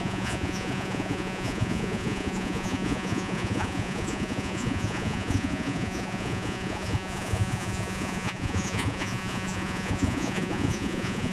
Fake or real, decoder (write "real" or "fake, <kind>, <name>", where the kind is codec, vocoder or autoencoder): fake, vocoder, Vocos